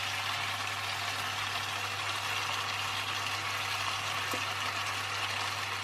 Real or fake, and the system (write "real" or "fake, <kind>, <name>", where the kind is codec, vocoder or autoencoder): real